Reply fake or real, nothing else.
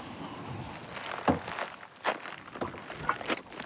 real